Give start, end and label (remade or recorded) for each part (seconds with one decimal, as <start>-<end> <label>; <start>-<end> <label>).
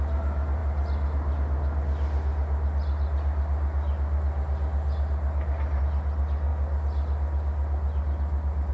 0.0-8.7 recorded